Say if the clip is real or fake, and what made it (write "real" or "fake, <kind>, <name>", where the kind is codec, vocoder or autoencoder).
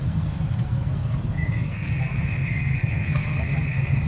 fake, codec, SNAC